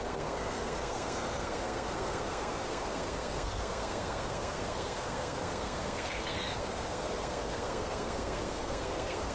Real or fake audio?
fake